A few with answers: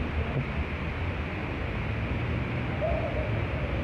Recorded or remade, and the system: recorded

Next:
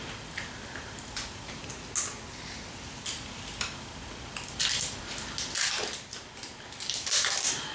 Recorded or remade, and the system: recorded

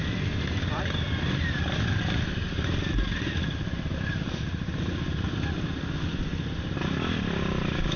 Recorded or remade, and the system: recorded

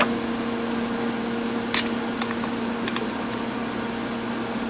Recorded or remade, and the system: recorded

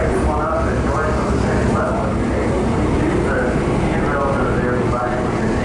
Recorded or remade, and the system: recorded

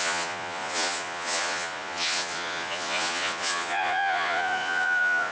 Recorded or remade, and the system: remade, vocoder, Vocos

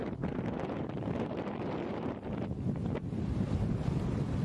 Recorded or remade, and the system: recorded